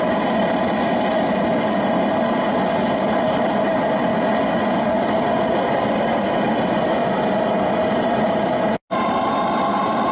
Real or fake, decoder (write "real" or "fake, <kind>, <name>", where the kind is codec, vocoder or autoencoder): real